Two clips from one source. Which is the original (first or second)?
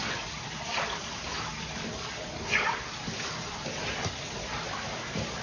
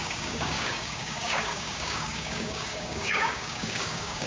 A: first